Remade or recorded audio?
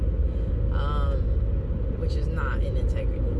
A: recorded